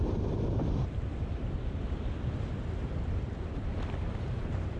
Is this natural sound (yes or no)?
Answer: no